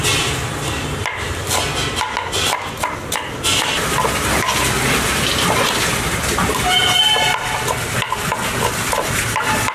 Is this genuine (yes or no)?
yes